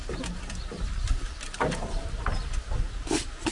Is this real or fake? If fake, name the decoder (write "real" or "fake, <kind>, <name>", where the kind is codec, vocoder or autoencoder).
real